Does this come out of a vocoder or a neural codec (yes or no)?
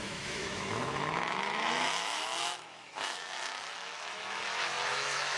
yes